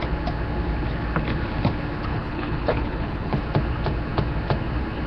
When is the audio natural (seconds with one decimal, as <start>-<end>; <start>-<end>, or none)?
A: 0.0-2.1; 3.4-5.1